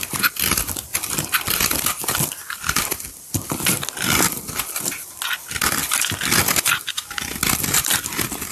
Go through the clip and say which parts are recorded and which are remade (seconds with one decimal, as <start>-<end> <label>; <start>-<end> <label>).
0.0-5.8 remade; 5.8-7.6 recorded; 7.6-8.5 remade